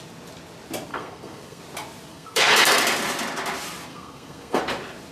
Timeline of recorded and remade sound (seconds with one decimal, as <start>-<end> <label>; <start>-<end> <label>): 0.0-0.9 recorded; 0.9-1.6 remade; 1.6-2.1 recorded; 2.1-2.8 remade; 2.8-3.9 recorded; 3.9-4.6 remade; 4.6-5.1 recorded